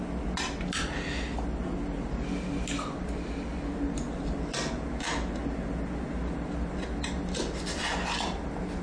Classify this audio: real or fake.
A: real